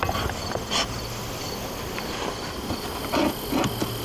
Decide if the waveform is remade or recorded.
recorded